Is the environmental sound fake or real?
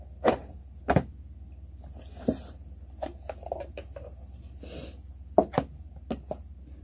real